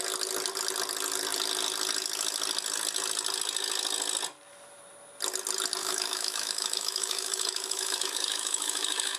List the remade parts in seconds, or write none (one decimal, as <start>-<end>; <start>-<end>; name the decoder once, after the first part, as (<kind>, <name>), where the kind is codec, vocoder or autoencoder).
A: 5.8-9.2 (autoencoder, DAC-VAE)

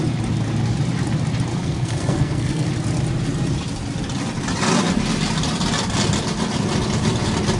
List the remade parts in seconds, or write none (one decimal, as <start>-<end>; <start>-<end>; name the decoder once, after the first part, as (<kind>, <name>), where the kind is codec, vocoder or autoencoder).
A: 1.5-2.7 (codec, SNAC)

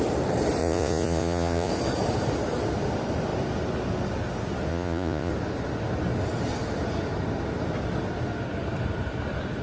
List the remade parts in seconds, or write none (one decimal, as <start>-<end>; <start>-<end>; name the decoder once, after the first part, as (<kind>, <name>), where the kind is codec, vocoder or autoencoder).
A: 0.6-1.7 (vocoder, Vocos); 4.7-5.3

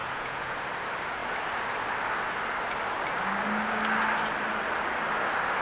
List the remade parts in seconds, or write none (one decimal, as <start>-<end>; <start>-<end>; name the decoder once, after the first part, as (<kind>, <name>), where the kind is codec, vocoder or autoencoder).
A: 0.0-0.6 (vocoder, Vocos)

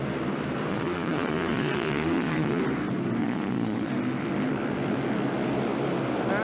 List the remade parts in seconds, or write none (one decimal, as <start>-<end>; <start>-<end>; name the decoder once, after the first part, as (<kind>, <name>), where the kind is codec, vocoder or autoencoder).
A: 0.7-2.6 (vocoder, Vocos); 3.2-3.9

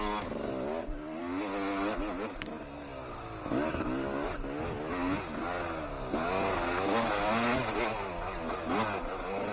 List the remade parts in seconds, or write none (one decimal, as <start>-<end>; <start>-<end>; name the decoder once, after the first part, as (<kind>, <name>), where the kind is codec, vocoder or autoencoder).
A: none

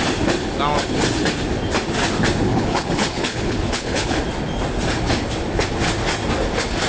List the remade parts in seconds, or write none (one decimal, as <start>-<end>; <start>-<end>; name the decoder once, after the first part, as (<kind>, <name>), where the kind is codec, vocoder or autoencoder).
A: 2.5-4.2 (codec, HILCodec)